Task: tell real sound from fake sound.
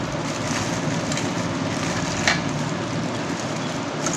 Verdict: real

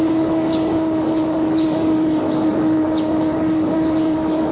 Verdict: fake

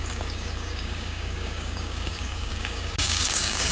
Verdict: fake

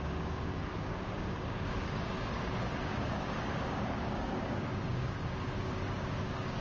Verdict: fake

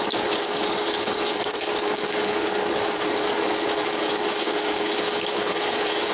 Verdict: fake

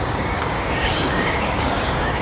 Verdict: fake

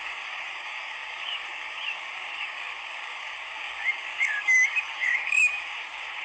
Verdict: fake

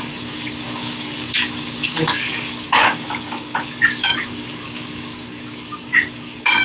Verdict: fake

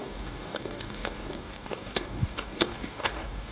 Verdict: fake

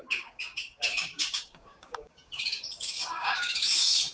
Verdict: fake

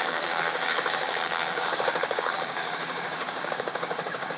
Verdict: fake